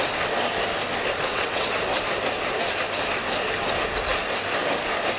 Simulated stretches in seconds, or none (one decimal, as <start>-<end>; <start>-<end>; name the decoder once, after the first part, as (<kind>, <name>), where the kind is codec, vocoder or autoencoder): 1.3-1.8 (vocoder, WaveNeXt)